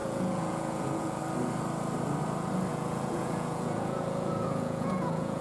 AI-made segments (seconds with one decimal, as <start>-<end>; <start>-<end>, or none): 0.0-1.2; 2.7-5.4